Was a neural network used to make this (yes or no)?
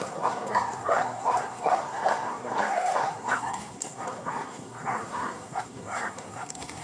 yes